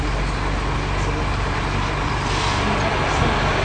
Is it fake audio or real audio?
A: real